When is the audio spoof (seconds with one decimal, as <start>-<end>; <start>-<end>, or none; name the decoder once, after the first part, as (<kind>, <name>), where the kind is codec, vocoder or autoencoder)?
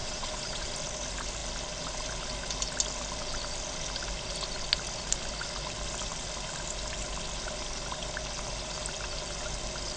0.0-0.7 (vocoder, Vocos)